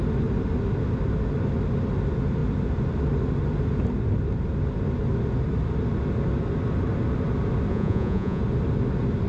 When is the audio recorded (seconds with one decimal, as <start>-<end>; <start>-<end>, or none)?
0.0-7.7; 8.4-9.3